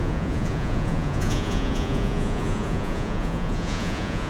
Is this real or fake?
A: fake